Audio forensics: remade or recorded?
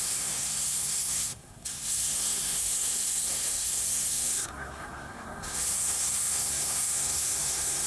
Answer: remade